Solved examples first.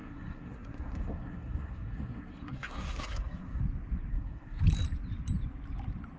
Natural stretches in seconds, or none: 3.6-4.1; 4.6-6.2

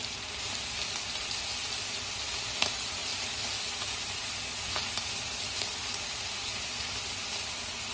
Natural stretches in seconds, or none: 0.0-7.9

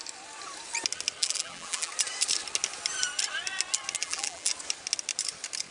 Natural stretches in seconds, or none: 0.0-1.2; 1.9-4.0; 4.5-5.7

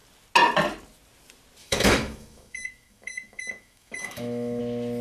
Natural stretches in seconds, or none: 0.0-1.6; 4.6-5.0

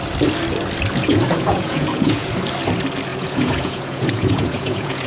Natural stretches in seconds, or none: 0.0-1.0; 2.3-3.1

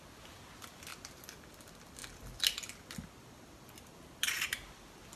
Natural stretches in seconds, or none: 0.0-5.2